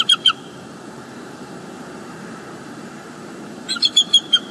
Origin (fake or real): fake